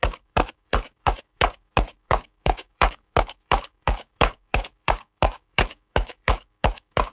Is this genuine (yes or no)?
no